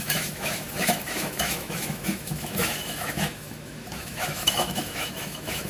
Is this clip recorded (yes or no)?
no